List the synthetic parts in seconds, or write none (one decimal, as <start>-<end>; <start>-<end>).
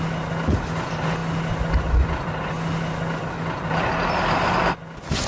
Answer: none